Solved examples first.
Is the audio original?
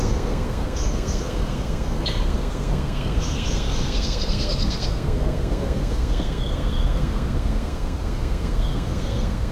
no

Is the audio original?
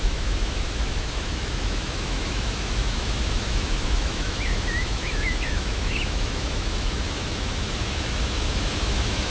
no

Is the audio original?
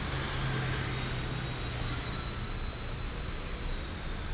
yes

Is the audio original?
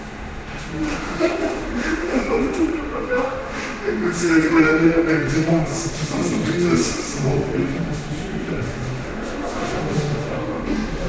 no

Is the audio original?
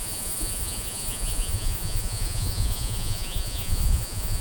no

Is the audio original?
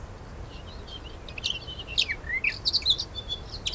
yes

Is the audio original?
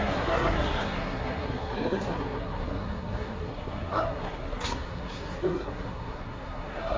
no